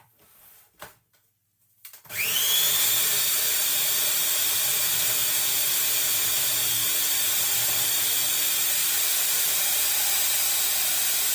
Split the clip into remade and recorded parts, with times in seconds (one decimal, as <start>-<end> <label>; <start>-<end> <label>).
0.0-8.8 remade; 8.8-9.4 recorded; 9.4-11.3 remade